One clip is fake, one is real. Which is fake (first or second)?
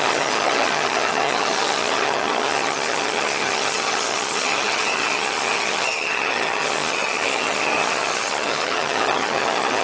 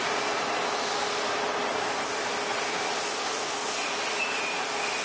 first